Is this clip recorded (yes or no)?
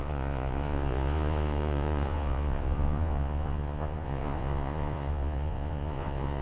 no